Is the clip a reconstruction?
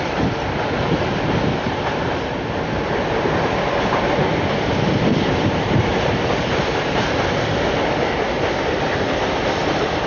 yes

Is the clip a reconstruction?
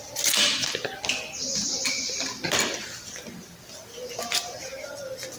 no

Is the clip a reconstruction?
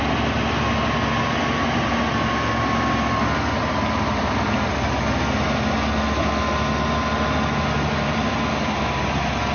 no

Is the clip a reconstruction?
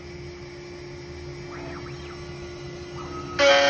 no